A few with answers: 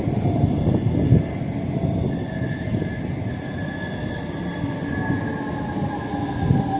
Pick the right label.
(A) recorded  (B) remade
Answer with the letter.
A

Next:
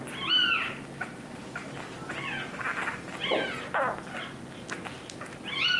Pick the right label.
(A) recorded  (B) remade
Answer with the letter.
A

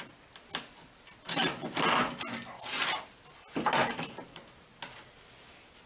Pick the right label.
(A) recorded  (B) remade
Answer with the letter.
A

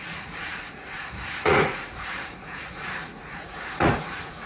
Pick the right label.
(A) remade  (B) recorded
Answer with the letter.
A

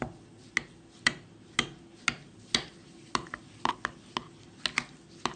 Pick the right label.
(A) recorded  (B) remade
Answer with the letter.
A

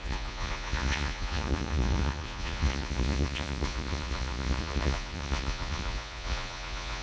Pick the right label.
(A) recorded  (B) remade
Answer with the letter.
B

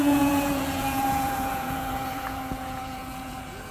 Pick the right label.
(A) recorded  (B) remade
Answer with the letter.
B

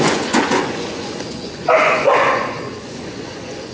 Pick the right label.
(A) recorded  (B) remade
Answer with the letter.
B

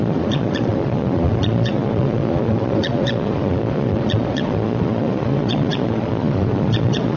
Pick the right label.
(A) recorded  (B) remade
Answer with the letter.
B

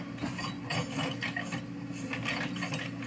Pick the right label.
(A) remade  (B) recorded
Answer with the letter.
B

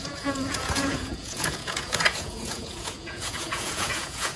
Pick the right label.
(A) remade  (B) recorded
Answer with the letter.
A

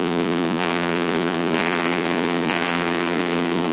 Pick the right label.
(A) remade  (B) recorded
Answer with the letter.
A